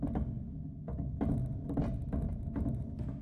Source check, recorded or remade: recorded